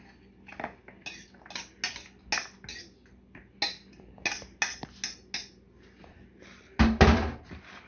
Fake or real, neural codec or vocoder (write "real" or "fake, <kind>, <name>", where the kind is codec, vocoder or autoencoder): real